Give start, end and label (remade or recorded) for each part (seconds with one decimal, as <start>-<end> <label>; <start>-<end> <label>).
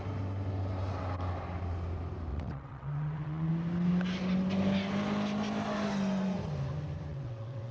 0.0-2.3 recorded; 2.3-3.5 remade; 3.5-7.1 recorded; 7.1-7.7 remade